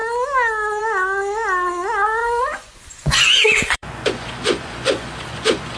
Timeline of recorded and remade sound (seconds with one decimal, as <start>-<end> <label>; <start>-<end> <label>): 0.0-2.2 recorded; 2.2-5.8 remade

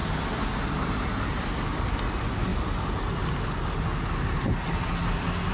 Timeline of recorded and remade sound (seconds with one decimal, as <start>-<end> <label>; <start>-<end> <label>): 0.0-5.5 recorded

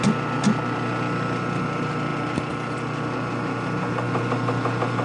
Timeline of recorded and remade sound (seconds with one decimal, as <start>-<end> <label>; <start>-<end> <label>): 0.0-5.0 recorded

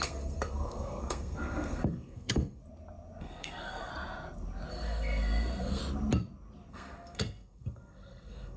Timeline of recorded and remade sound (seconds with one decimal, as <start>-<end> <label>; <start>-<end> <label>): 0.0-2.6 remade; 2.6-3.2 recorded; 3.2-3.9 remade; 3.9-4.7 recorded; 4.7-5.8 remade; 5.8-6.7 recorded; 6.7-8.6 remade

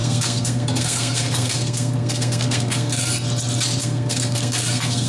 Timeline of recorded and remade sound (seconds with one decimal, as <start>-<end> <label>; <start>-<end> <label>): 0.0-3.1 remade; 3.1-3.8 recorded; 3.8-5.1 remade

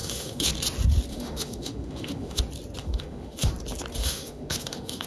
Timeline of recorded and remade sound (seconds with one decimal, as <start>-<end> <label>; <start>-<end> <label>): 0.0-0.5 remade; 0.5-1.1 recorded; 1.1-2.4 remade; 2.4-2.8 recorded; 2.8-3.5 remade; 3.5-4.0 recorded; 4.0-5.1 remade

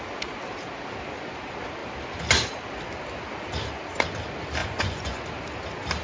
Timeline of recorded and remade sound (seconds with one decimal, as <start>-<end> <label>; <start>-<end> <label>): 0.0-4.6 recorded; 4.6-5.2 remade; 5.2-6.0 recorded

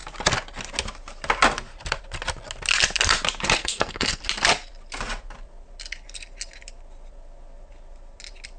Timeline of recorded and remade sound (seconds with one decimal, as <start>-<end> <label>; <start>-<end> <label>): 0.0-3.6 recorded; 3.6-4.2 remade; 4.2-8.6 recorded